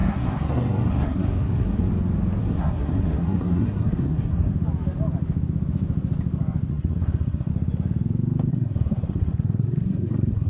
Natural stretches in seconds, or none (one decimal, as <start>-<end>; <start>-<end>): 1.9-2.4; 4.5-6.7; 7.5-8.5